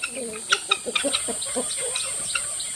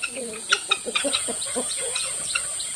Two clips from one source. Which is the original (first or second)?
first